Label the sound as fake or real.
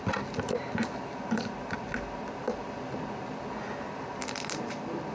real